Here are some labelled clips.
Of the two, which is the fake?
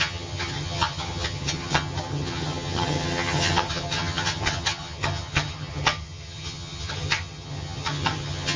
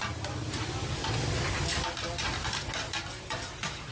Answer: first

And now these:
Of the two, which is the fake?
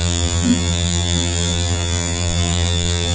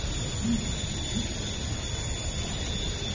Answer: first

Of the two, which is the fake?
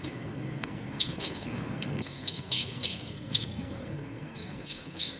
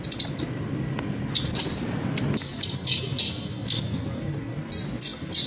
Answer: first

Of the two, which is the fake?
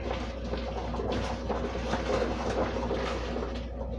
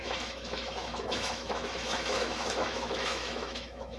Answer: second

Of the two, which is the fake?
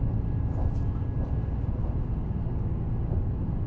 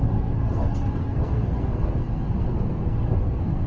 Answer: second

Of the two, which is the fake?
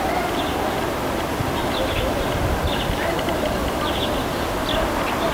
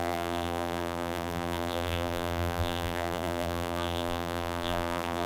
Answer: second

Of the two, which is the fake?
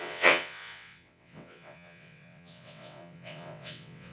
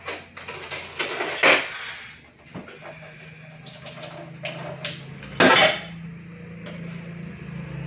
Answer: first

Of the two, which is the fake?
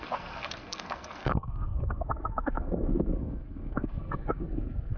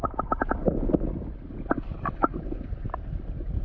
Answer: first